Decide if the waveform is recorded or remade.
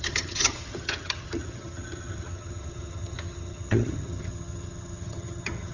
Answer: remade